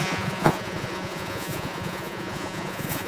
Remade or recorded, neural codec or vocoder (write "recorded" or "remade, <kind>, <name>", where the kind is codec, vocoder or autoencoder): remade, vocoder, Vocos